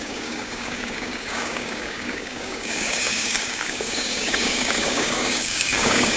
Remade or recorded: remade